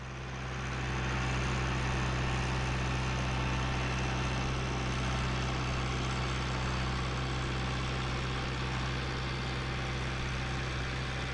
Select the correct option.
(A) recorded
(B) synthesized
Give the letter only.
A